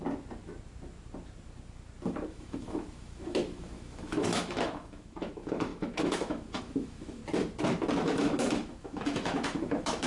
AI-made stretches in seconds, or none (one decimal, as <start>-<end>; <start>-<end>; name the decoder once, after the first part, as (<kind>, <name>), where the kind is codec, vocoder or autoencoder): 2.3-7.2 (autoencoder, DAC-VAE); 8.0-10.1